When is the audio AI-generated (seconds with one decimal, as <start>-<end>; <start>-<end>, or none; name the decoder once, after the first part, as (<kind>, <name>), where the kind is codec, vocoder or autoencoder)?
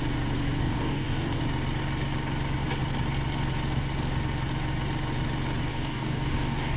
0.6-1.4 (codec, DAC); 5.7-6.8